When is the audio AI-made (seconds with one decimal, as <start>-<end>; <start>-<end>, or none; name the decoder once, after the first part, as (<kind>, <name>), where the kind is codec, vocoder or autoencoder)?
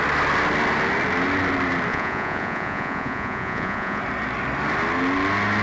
1.9-4.0 (vocoder, Vocos)